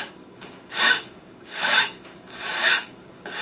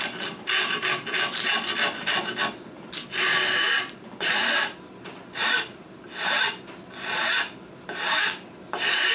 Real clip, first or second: second